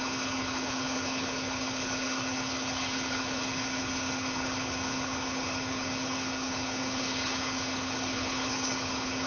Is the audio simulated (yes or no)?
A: yes